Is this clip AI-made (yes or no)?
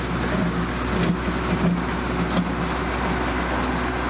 no